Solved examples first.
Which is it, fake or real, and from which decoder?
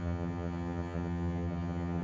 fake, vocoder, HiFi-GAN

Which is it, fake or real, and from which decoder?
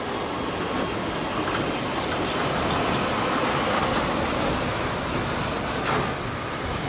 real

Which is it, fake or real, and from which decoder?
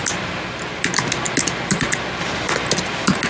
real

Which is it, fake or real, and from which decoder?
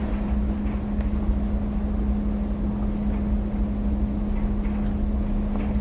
real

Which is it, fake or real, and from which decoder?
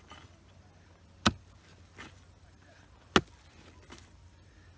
real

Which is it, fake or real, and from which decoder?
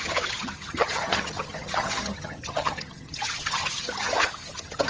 fake, vocoder, HiFi-GAN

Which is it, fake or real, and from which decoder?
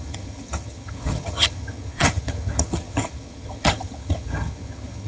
fake, vocoder, HiFi-GAN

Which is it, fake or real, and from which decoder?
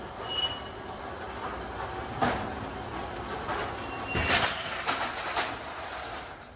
real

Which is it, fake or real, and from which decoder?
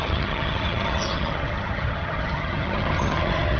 fake, vocoder, HiFi-GAN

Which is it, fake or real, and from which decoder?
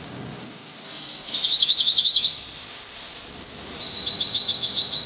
real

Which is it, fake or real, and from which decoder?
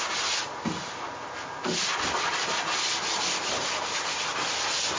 real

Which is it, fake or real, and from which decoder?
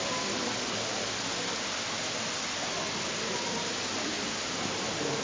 real